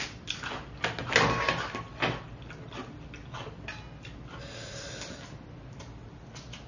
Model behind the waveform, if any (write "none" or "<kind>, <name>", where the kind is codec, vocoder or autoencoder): none